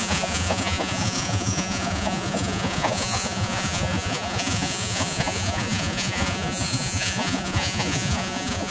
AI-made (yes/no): yes